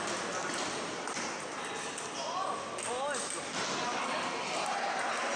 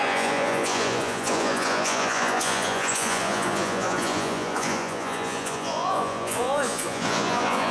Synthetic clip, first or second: second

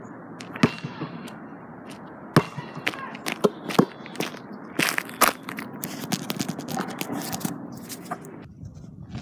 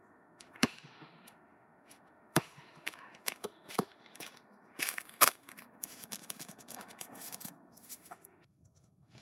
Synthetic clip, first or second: second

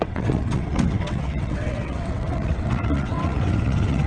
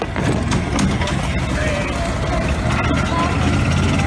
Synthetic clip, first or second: first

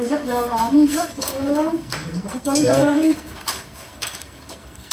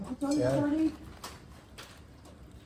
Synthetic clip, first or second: first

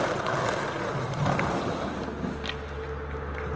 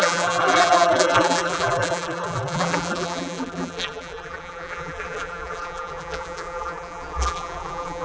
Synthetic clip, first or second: second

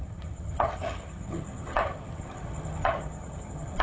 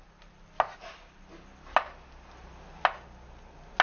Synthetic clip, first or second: first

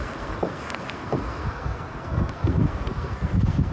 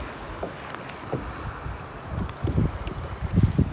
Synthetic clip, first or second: first